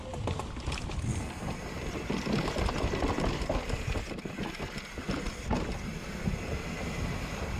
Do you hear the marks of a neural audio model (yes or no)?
no